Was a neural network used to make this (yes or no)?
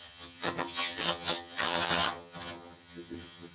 yes